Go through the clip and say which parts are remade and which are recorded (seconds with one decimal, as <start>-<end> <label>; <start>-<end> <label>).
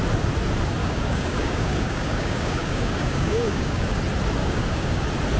0.0-0.8 recorded; 0.8-4.0 remade; 4.0-4.4 recorded; 4.4-5.0 remade; 5.0-5.4 recorded